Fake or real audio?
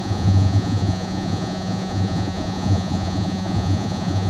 fake